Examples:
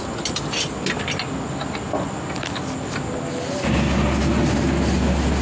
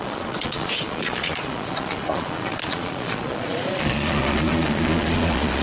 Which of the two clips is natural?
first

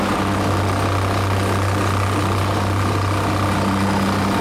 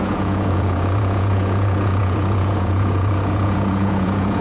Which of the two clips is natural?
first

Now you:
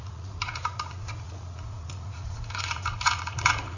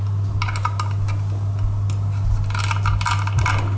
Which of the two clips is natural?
second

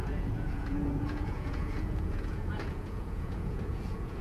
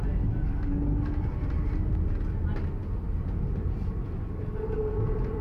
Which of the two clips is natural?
second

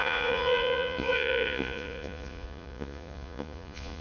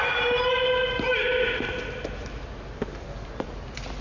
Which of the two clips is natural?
second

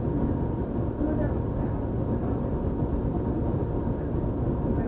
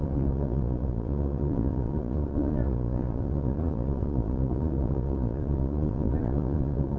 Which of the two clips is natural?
first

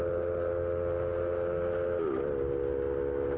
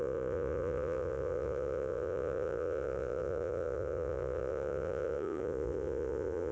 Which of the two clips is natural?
first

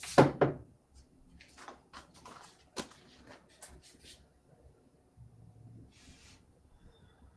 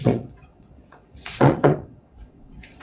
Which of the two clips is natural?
first